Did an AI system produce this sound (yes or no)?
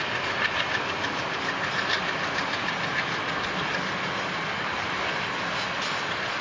no